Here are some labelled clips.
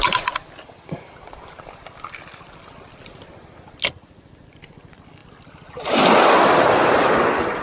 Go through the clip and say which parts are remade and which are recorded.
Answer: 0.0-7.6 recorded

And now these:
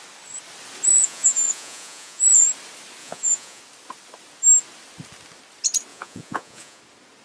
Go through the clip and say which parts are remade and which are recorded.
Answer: 0.0-0.9 recorded; 0.9-2.4 remade; 2.4-3.0 recorded; 3.0-3.6 remade; 3.6-5.9 recorded; 5.9-6.8 remade; 6.8-7.2 recorded

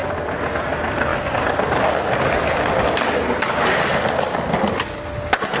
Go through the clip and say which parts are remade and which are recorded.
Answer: 0.0-5.6 recorded

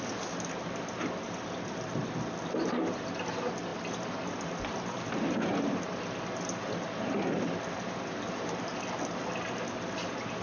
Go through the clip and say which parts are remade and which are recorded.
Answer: 0.0-10.4 recorded

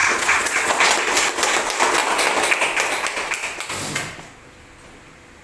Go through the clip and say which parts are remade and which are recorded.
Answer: 0.0-0.9 remade; 0.9-5.4 recorded

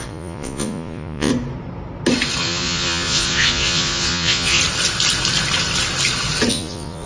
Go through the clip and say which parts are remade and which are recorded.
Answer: 0.0-1.3 remade; 1.3-2.4 recorded; 2.4-4.6 remade; 4.6-6.5 recorded; 6.5-7.1 remade

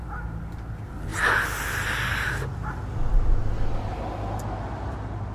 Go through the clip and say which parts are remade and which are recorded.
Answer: 0.0-5.3 recorded

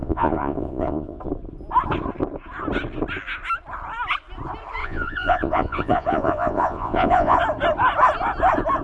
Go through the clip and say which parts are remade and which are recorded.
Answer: 0.0-1.2 remade; 1.2-4.8 recorded; 4.8-7.4 remade; 7.4-8.8 recorded